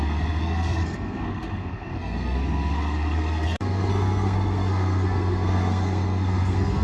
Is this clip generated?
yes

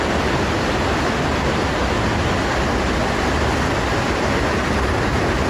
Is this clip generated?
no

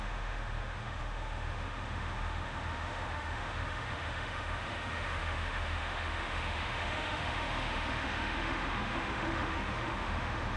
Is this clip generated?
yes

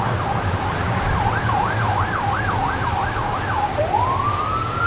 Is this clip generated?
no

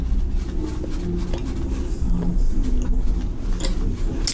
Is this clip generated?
no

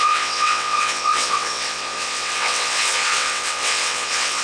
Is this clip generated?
yes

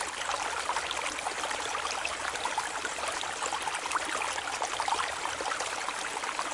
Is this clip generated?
no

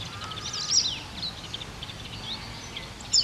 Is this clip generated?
no